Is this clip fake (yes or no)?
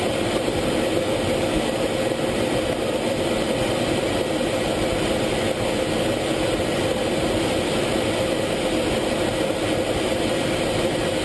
no